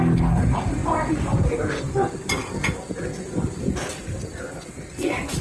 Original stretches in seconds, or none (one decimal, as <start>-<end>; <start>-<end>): 0.0-5.4